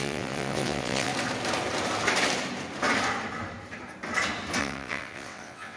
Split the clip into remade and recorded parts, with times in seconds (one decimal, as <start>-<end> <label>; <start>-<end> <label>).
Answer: 0.0-1.1 remade; 1.1-4.6 recorded; 4.6-5.8 remade